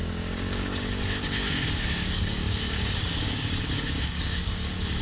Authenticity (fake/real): fake